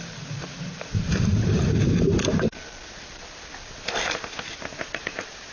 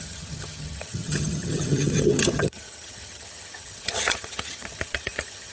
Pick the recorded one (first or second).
first